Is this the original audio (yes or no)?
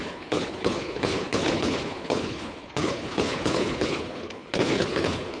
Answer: no